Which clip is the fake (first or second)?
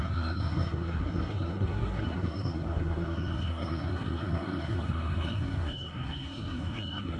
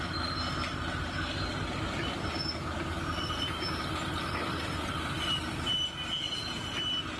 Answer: first